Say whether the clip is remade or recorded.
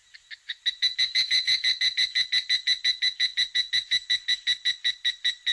recorded